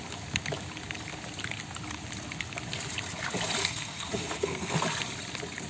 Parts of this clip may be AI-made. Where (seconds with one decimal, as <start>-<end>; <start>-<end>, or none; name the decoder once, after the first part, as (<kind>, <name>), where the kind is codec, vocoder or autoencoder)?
3.6-4.8 (codec, SNAC)